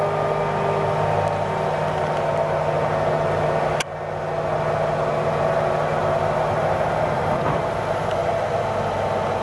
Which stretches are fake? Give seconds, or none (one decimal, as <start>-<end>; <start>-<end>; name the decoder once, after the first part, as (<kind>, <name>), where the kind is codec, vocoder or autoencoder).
none